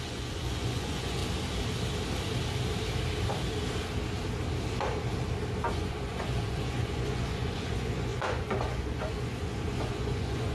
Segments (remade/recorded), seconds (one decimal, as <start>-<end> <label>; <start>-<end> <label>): 0.0-1.2 remade; 1.2-5.7 recorded; 5.7-10.5 remade